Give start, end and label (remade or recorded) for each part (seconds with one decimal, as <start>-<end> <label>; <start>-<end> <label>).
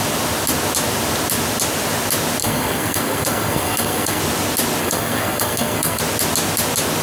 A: 0.0-2.4 recorded; 2.4-4.2 remade; 4.2-4.8 recorded; 4.8-6.0 remade; 6.0-7.0 recorded